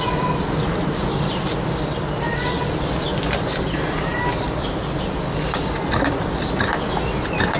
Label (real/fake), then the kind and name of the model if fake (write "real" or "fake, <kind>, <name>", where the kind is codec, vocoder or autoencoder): real